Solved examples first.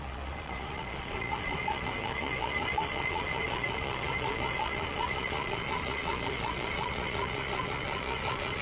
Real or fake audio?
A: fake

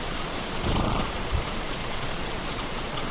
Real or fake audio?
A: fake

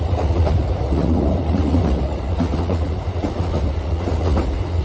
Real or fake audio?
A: fake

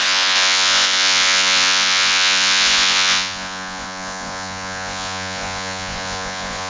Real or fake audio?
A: fake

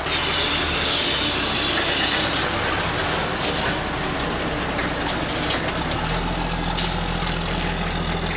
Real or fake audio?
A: real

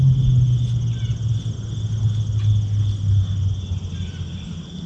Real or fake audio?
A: real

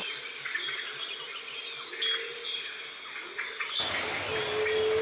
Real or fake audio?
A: real